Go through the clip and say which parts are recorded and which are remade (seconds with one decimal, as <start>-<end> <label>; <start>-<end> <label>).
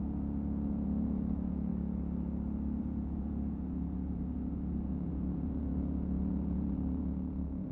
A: 0.0-1.7 remade; 1.7-2.8 recorded; 2.8-7.7 remade